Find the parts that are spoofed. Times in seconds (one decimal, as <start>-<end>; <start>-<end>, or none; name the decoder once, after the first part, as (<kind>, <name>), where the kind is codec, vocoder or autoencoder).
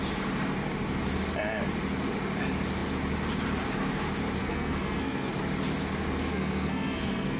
4.4-5.3 (codec, SNAC); 6.3-7.4